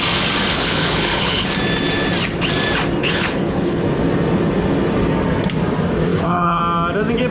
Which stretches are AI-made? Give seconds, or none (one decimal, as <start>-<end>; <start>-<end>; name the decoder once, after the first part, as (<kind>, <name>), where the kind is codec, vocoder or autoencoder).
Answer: 0.5-1.5 (codec, HILCodec); 3.0-3.8; 6.1-6.6